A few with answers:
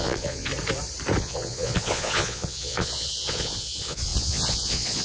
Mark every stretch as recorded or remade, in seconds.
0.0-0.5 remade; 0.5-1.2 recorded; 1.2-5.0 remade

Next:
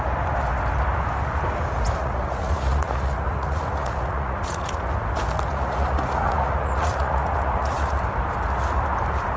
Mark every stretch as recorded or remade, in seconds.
0.0-2.0 recorded; 2.0-4.9 remade; 4.9-5.5 recorded; 5.5-8.0 remade; 8.0-9.4 recorded

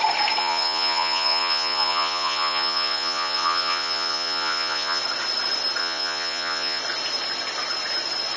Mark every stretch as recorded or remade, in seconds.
0.0-0.4 recorded; 0.4-5.0 remade; 5.0-5.8 recorded; 5.8-6.8 remade; 6.8-8.4 recorded

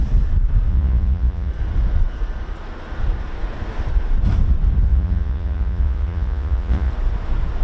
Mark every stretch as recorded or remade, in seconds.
0.0-0.7 recorded; 0.7-1.5 remade; 1.5-4.9 recorded; 4.9-6.9 remade; 6.9-7.6 recorded

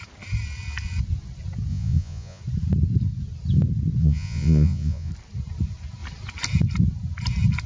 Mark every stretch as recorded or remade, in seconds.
0.0-1.7 recorded; 1.7-2.4 remade; 2.4-4.0 recorded; 4.0-5.1 remade; 5.1-7.7 recorded

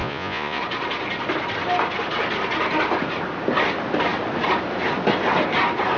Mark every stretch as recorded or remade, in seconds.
0.0-0.6 remade; 0.6-6.0 recorded